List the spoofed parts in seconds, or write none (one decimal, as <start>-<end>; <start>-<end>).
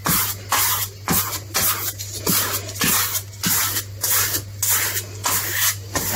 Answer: none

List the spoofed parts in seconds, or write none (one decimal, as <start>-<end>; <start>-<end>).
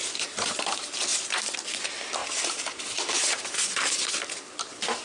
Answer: 0.0-0.7; 2.2-4.1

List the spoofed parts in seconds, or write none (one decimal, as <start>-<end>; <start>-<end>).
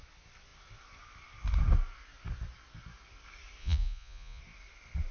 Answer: 3.6-4.4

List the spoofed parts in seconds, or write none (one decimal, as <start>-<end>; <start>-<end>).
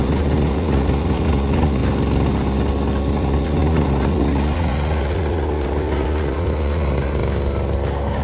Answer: 0.0-1.8; 3.1-7.2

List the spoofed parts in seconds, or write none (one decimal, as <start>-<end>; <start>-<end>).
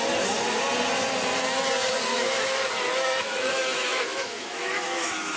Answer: 2.1-5.4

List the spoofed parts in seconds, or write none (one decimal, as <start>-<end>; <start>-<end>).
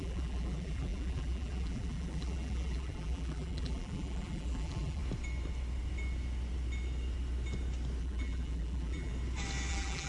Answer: 0.0-5.0; 8.0-9.1; 9.7-10.1